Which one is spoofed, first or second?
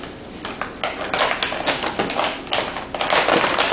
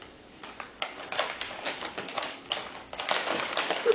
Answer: second